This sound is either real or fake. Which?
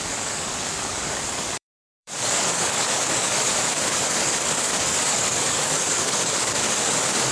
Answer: fake